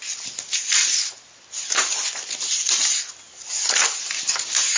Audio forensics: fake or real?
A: real